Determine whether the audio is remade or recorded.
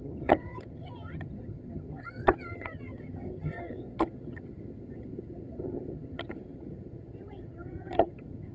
remade